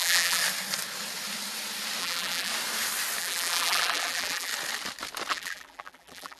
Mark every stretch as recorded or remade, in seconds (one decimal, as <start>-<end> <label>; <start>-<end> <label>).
0.0-0.4 remade; 0.4-2.0 recorded; 2.0-2.5 remade; 2.5-3.2 recorded; 3.2-4.5 remade; 4.5-5.3 recorded; 5.3-6.4 remade